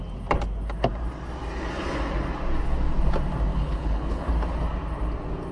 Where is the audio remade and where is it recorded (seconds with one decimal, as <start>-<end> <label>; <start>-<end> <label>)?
0.0-3.5 recorded; 3.5-4.3 remade; 4.3-5.5 recorded

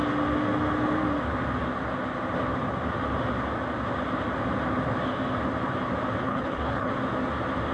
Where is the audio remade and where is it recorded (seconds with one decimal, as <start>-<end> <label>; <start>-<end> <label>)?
0.0-6.2 recorded; 6.2-6.9 remade; 6.9-7.7 recorded

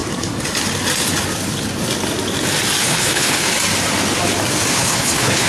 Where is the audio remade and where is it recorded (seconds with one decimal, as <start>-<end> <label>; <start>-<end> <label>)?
0.0-2.8 recorded; 2.8-3.5 remade; 3.5-4.7 recorded; 4.7-5.5 remade

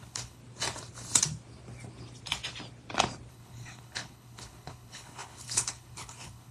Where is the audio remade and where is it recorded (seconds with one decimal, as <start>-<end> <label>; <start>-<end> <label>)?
0.0-0.4 remade; 0.4-3.3 recorded; 3.3-6.5 remade

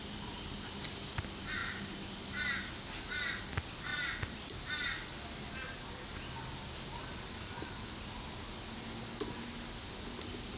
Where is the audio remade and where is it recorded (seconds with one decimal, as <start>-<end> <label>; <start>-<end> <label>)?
0.0-10.6 recorded